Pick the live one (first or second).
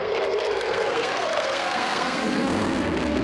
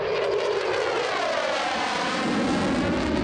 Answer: second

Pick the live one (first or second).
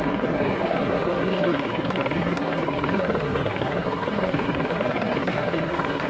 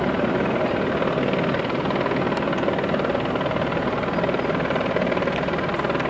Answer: second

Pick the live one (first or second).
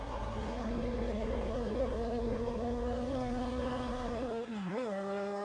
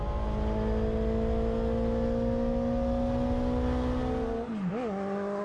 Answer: second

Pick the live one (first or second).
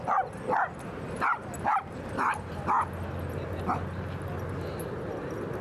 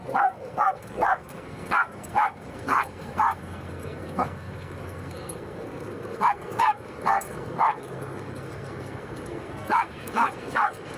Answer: first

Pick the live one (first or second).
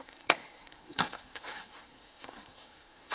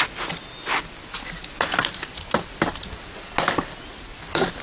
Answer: second